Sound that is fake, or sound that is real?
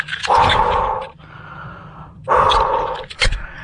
fake